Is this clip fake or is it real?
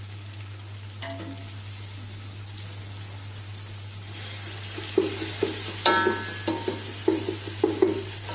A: real